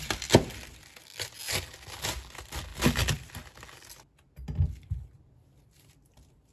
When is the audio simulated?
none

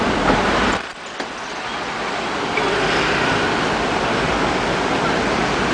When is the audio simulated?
none

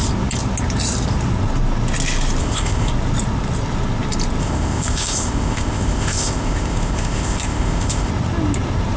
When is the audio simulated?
2.4-2.9 (codec, ZipCodec); 4.4-8.1

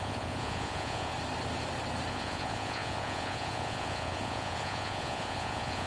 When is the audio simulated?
0.0-1.1 (vocoder, Vocos); 2.1-5.9

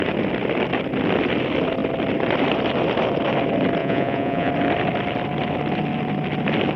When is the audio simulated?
3.8-4.5 (vocoder, Vocos)

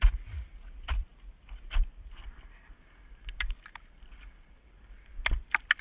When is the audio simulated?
0.7-5.8 (vocoder, BigVGAN v2)